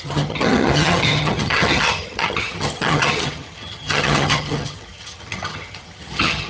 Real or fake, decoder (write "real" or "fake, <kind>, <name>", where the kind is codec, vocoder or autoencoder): fake, vocoder, HiFi-GAN